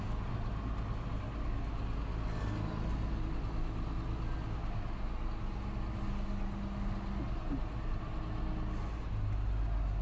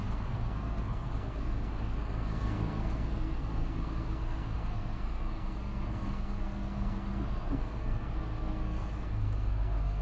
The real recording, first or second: first